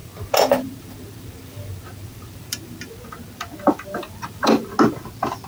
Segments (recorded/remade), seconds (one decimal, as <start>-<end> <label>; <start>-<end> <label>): 0.0-2.9 remade; 2.9-4.0 recorded; 4.0-4.5 remade; 4.5-5.5 recorded